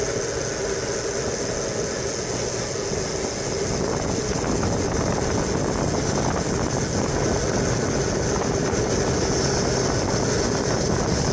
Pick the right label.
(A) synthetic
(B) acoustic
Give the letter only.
B